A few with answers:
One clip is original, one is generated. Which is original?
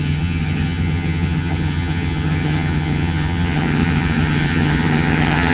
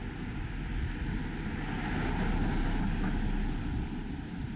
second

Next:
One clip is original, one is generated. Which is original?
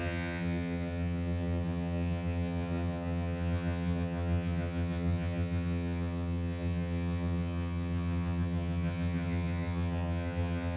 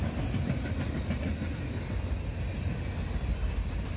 second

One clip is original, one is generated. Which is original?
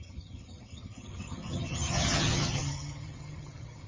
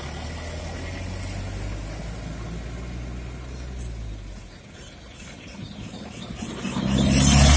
second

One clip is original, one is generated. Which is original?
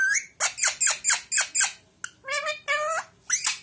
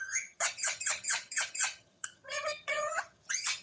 first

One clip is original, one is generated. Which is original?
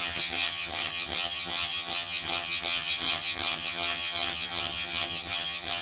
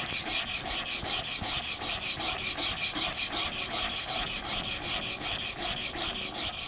second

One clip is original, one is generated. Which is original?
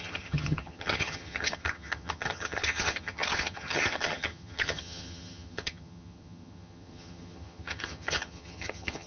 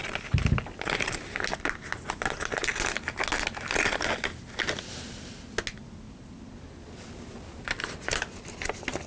second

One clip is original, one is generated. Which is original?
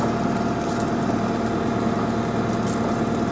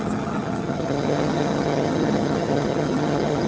first